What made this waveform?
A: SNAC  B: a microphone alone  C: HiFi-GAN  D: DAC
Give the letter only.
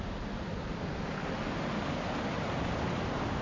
B